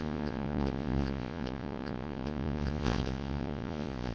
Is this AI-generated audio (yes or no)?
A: yes